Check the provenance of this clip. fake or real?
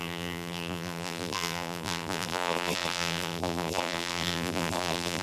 fake